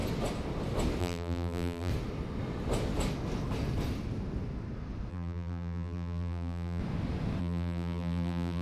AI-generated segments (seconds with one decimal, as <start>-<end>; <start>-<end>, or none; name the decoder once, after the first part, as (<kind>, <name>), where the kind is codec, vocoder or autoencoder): 1.0-1.9 (vocoder, BigVGAN v2); 5.1-6.8; 7.4-8.6

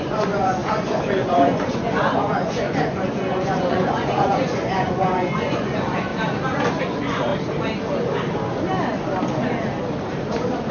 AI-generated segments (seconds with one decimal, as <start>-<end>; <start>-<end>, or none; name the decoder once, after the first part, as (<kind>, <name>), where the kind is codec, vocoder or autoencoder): 0.0-6.1 (vocoder, Vocos); 6.8-7.3

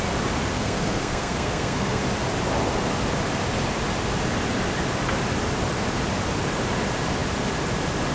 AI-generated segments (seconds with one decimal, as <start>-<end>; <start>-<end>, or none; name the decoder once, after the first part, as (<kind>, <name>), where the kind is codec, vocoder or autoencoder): 0.5-2.0 (codec, SNAC)

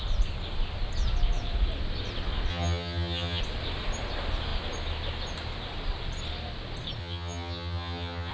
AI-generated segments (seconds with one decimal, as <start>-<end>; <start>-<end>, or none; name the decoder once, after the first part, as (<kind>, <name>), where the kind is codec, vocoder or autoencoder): 2.5-3.4 (vocoder, HiFi-GAN); 7.0-8.3

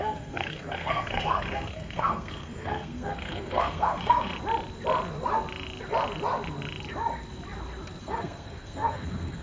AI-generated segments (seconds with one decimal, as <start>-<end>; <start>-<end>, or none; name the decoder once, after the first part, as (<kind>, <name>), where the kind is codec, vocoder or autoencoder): 0.0-4.3 (codec, SNAC); 8.0-9.4